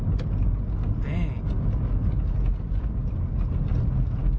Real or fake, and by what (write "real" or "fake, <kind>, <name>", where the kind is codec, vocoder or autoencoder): real